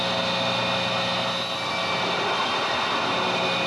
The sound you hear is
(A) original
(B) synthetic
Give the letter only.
A